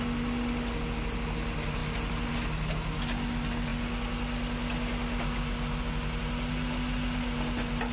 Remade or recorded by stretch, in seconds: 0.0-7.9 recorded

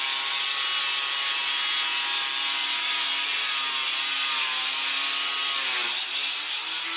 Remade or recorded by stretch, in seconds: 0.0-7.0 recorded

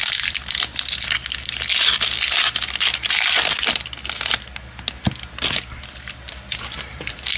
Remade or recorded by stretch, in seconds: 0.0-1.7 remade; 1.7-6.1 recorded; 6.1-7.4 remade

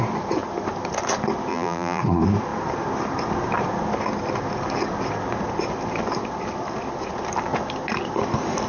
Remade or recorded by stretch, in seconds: 0.0-1.5 recorded; 1.5-2.0 remade; 2.0-8.7 recorded

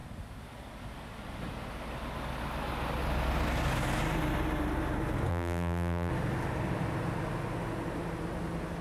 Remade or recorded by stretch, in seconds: 0.0-5.3 recorded; 5.3-6.1 remade; 6.1-8.8 recorded

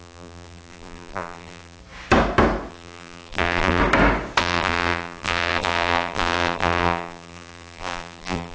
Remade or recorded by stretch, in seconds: 0.0-1.8 remade; 1.8-2.7 recorded; 2.7-3.8 remade; 3.8-4.4 recorded; 4.4-8.5 remade